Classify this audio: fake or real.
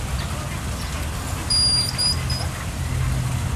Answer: real